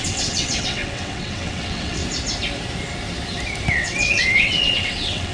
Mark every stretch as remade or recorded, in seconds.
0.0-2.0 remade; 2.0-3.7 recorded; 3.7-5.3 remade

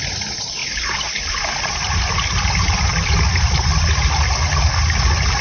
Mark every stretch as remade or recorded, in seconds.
0.0-5.4 recorded